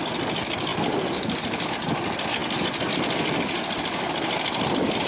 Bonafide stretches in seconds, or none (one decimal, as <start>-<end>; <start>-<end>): 0.0-5.1